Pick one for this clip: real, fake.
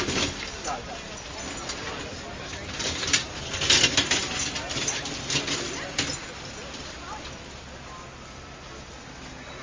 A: real